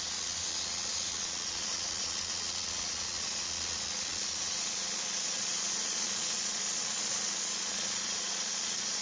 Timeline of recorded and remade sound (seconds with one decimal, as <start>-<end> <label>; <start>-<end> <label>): 0.0-9.0 remade